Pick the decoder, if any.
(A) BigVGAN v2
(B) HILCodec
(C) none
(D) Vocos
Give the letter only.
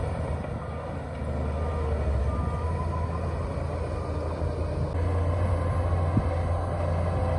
C